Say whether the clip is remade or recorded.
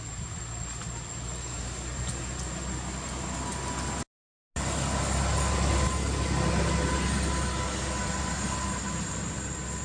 recorded